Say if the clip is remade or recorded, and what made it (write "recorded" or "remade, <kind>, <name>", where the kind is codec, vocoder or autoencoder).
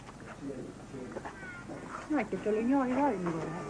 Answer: recorded